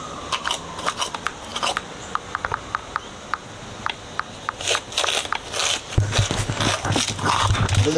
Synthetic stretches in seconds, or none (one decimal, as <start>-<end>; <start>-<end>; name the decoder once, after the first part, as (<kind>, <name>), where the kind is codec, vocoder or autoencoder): none